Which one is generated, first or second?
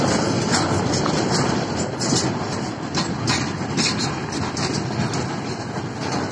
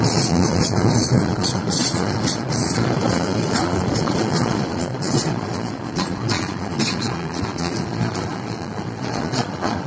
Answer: second